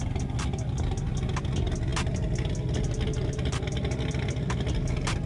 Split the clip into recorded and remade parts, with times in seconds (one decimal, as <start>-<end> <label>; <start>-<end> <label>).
0.0-5.3 recorded